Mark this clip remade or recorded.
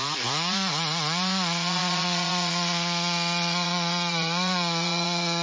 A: remade